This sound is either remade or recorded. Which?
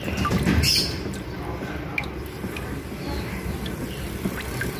recorded